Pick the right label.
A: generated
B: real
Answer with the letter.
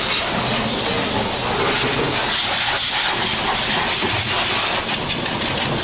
B